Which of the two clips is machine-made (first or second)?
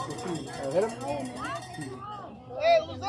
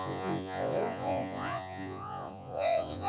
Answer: second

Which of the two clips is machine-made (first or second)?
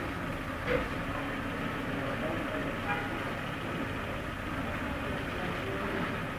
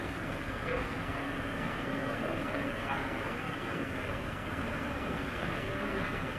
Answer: second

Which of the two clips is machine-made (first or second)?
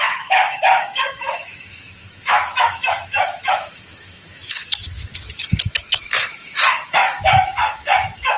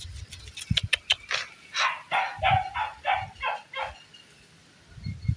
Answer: first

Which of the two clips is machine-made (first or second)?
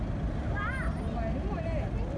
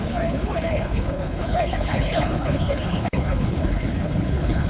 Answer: second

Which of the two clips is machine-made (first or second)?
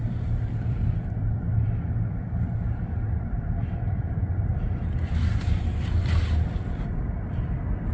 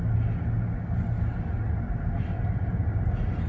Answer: first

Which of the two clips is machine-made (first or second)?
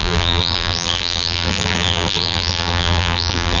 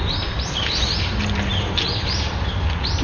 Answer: first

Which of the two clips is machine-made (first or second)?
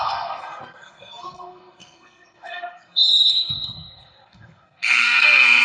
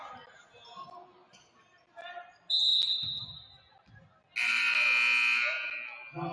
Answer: first